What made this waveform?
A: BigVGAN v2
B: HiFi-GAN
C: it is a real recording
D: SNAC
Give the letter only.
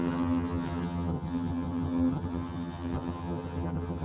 B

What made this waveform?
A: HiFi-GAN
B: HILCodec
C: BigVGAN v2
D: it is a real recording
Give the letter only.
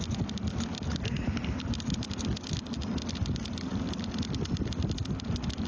D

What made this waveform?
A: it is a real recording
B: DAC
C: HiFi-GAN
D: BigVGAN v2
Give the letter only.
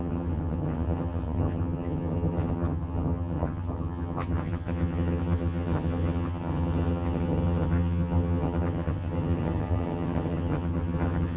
C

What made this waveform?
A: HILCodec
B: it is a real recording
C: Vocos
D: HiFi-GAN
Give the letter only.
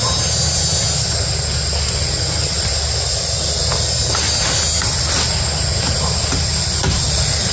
B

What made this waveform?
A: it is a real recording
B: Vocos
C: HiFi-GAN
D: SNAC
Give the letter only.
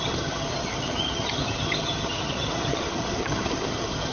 C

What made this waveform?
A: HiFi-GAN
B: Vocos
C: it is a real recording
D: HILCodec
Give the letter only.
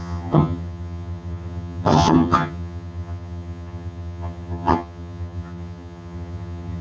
A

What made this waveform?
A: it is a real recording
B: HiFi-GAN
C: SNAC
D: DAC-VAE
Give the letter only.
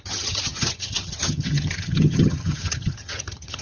B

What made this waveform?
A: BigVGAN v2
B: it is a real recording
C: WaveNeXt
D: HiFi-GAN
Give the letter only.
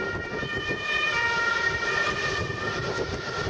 B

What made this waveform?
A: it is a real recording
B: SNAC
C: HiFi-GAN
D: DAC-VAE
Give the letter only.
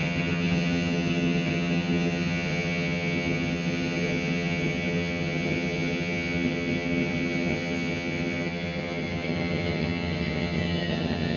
C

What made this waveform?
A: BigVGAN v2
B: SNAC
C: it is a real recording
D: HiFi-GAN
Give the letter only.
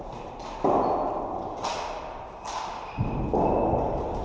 C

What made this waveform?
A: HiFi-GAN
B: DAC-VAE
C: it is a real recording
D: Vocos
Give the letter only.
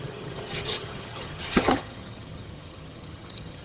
A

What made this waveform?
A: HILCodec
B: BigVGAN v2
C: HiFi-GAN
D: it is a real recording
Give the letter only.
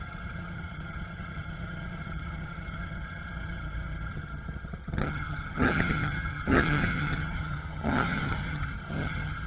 C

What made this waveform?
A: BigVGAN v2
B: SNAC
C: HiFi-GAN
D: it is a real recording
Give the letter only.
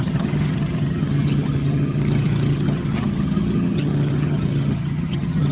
C